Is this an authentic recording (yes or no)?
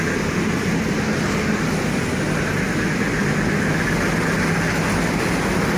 yes